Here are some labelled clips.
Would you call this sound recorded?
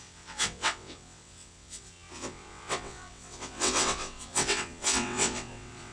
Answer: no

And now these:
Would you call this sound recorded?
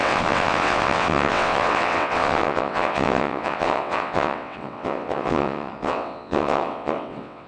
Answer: no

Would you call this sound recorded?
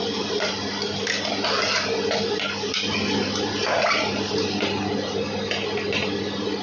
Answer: yes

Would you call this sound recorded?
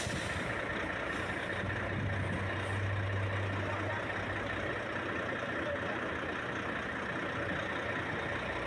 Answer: yes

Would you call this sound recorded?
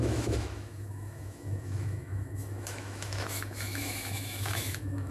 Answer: no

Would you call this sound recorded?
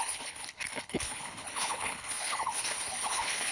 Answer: no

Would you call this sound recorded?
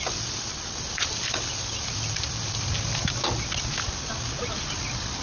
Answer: yes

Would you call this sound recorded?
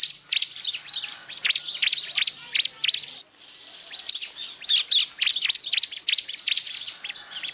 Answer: yes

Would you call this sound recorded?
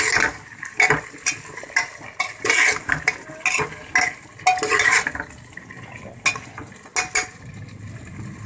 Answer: yes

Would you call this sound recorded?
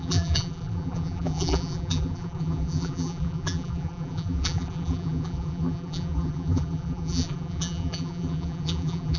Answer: no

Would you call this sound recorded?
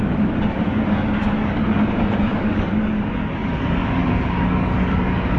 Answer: no